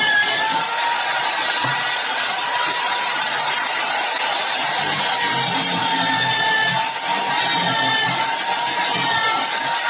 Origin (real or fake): real